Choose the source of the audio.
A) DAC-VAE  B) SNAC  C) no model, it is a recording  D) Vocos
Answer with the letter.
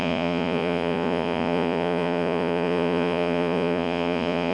D